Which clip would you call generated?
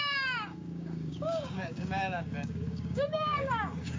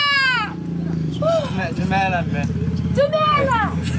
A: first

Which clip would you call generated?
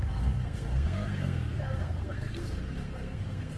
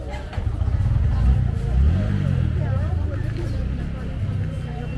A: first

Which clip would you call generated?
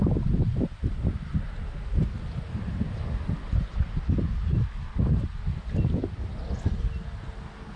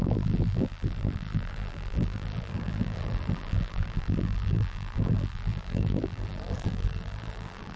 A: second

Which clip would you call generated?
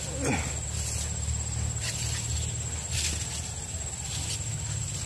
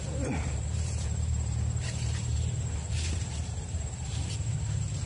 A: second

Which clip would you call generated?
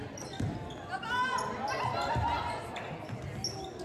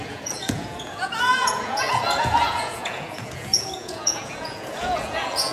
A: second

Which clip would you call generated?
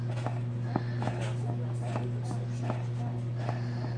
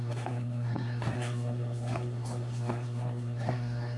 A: second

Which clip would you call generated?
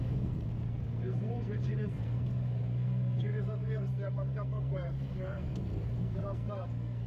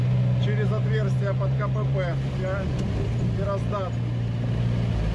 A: first